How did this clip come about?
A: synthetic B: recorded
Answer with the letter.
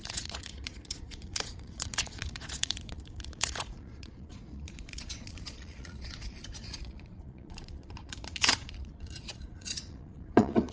A